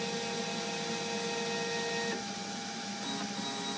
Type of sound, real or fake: real